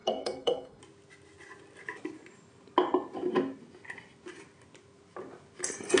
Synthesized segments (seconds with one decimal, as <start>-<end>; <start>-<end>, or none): 0.0-0.8